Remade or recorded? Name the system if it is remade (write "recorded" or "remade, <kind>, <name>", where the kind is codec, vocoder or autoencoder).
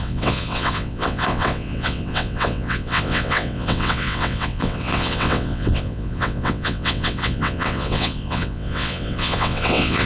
remade, vocoder, WaveNeXt